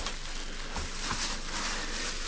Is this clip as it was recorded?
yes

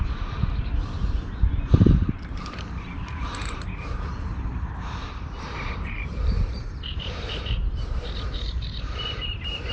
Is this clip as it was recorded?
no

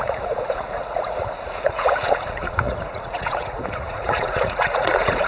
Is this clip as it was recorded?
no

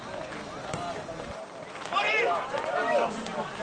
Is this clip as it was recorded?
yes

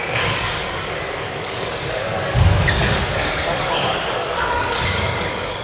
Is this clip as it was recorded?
no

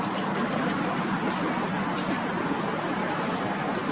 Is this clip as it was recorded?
yes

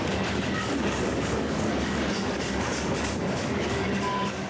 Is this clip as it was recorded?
no